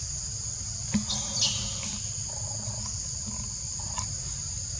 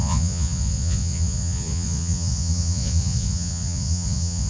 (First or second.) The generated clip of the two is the second